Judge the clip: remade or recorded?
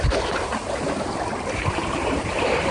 remade